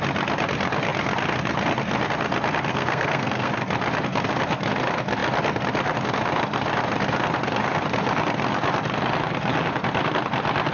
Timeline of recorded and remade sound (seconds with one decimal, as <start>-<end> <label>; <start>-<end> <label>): 0.0-2.7 recorded; 2.7-3.5 remade; 3.5-10.7 recorded